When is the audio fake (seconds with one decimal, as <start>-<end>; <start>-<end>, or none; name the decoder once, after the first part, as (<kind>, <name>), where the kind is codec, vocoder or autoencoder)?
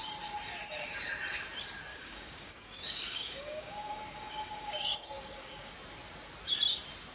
1.9-5.7 (codec, DAC)